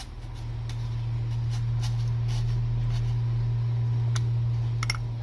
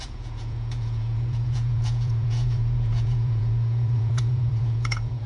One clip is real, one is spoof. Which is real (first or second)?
first